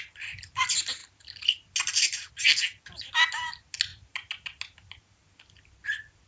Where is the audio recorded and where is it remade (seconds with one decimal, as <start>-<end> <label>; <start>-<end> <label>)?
0.0-6.3 recorded